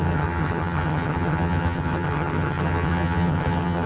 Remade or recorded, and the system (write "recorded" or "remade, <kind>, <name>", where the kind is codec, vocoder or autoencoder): remade, vocoder, HiFi-GAN